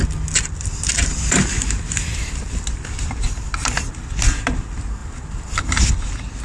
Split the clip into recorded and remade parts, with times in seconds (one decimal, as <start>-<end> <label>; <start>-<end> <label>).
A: 0.0-1.1 recorded; 1.1-2.4 remade; 2.4-5.0 recorded; 5.0-5.8 remade; 5.8-6.4 recorded